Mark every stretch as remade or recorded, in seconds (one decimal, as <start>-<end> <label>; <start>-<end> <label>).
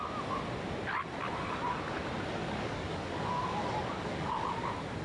0.0-2.4 recorded; 2.4-3.2 remade; 3.2-3.6 recorded; 3.6-4.3 remade; 4.3-5.0 recorded